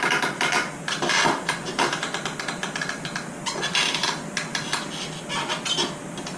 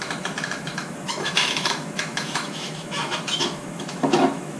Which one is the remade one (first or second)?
second